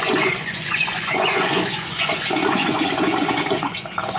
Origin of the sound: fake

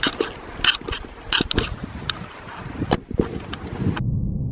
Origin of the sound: real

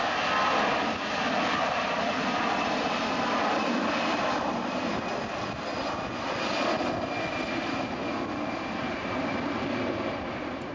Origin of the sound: real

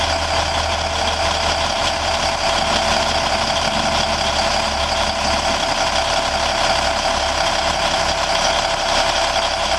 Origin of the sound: real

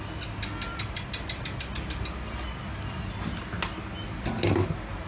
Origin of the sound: real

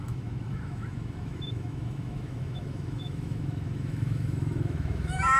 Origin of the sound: fake